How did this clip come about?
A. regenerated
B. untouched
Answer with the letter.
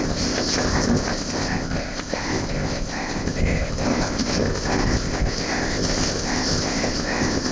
A